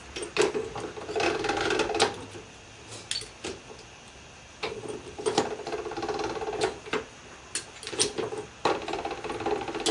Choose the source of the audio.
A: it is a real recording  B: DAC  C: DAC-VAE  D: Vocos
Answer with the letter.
A